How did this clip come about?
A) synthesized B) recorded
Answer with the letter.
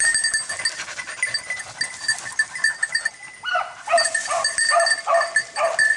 B